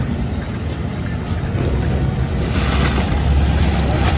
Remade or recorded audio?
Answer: recorded